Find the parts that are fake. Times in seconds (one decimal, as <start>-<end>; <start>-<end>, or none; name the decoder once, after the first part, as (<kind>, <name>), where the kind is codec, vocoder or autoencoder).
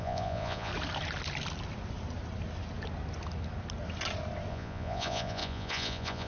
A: 0.0-0.7 (vocoder, Vocos); 4.5-6.3